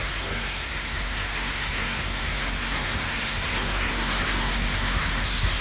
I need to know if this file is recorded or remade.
remade